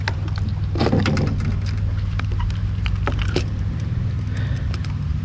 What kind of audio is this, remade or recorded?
recorded